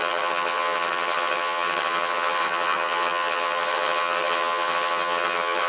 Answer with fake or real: fake